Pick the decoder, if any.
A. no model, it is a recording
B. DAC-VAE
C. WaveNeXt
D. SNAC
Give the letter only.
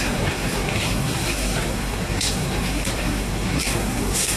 D